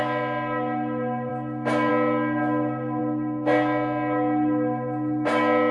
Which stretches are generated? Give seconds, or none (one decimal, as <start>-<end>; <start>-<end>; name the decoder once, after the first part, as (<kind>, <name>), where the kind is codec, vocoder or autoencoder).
none